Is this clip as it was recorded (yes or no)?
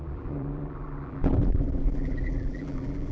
no